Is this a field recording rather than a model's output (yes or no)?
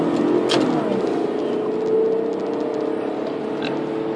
yes